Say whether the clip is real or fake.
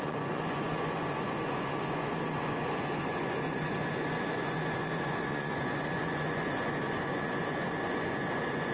fake